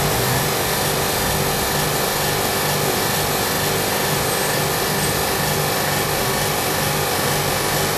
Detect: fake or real real